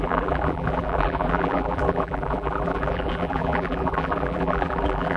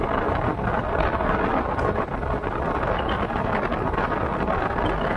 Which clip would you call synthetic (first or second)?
first